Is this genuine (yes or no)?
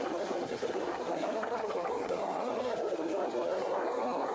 no